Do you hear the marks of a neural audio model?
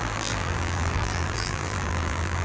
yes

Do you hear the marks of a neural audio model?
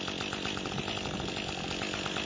no